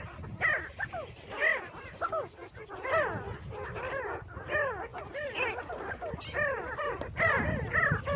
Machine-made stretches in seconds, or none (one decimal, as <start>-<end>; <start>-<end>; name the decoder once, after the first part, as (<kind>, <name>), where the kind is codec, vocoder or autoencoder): 1.5-2.7 (vocoder, BigVGAN v2); 4.9-5.9